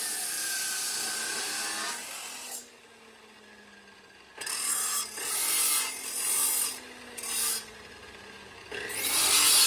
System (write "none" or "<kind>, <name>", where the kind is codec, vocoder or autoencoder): none